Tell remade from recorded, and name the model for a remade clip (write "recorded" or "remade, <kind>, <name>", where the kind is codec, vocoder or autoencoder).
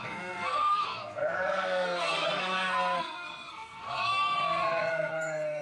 remade, codec, SNAC